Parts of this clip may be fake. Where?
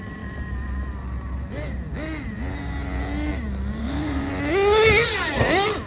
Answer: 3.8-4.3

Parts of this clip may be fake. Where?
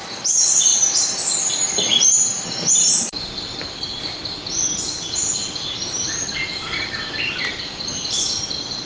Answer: 0.0-0.7; 1.4-8.9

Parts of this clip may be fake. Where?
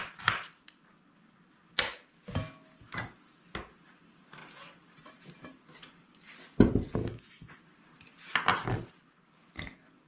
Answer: 7.0-7.6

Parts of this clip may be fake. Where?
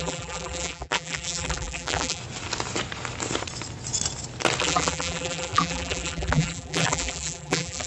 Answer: 0.0-2.2; 4.6-7.9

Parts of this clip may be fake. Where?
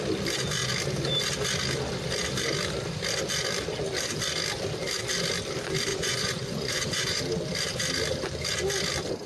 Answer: 5.9-7.2